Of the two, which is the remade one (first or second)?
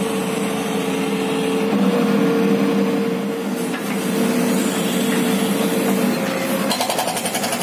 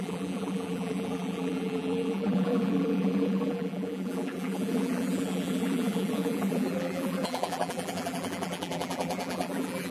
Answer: second